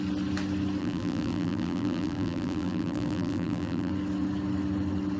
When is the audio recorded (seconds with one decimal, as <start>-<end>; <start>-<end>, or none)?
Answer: 0.0-0.8; 3.9-5.2